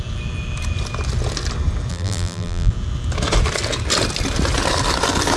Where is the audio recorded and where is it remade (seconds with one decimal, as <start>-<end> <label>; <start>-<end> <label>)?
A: 0.0-1.9 recorded; 1.9-2.7 remade; 2.7-5.4 recorded

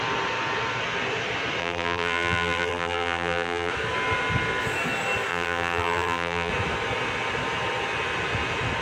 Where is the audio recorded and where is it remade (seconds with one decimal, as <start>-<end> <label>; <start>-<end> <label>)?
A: 0.0-1.6 recorded; 1.6-3.7 remade; 3.7-5.3 recorded; 5.3-6.5 remade; 6.5-8.8 recorded

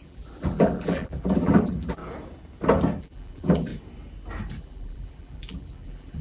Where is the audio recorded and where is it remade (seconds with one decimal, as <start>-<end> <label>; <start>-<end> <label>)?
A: 0.0-2.0 remade; 2.0-3.0 recorded; 3.0-3.7 remade; 3.7-4.6 recorded; 4.6-6.2 remade

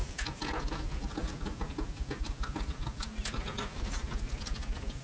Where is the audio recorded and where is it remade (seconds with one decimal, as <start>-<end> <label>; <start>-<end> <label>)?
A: 0.0-5.0 recorded

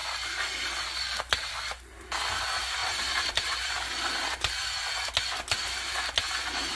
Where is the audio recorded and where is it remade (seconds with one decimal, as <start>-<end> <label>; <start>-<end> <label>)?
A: 0.0-2.8 recorded; 2.8-3.7 remade; 3.7-6.8 recorded

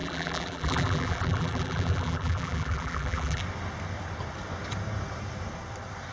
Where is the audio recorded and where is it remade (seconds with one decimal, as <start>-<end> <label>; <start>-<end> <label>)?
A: 0.0-3.4 remade; 3.4-6.1 recorded

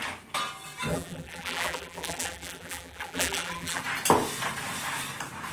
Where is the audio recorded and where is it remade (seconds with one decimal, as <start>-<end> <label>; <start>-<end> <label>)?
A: 0.0-0.9 recorded; 0.9-3.8 remade; 3.8-5.5 recorded

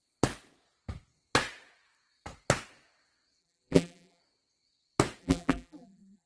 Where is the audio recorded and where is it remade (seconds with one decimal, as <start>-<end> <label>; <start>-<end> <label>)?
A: 0.0-3.4 recorded; 3.4-4.2 remade; 4.2-5.2 recorded; 5.2-6.3 remade